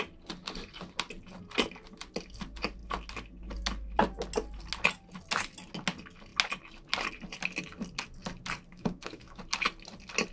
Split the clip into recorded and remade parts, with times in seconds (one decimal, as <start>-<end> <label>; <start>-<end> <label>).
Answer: 0.0-8.7 recorded; 8.7-9.4 remade; 9.4-10.3 recorded